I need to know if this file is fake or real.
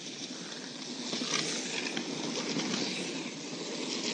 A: fake